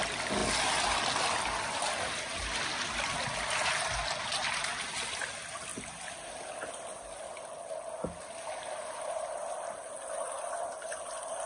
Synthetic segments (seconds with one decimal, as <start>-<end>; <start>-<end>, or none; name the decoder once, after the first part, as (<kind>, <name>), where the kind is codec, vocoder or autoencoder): none